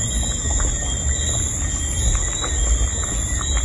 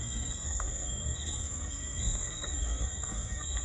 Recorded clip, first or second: first